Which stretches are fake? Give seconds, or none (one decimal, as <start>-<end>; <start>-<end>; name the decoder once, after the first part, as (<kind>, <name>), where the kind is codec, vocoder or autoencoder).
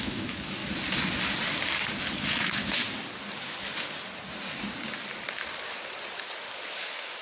0.0-0.6 (autoencoder, DAC-VAE); 2.2-2.8; 6.7-7.2